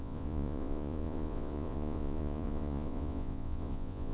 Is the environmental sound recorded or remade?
remade